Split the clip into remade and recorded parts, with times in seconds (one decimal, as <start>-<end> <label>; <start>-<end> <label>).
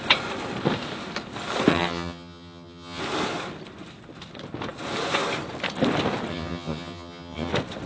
0.0-1.7 recorded; 1.7-3.0 remade; 3.0-6.3 recorded; 6.3-7.5 remade; 7.5-7.9 recorded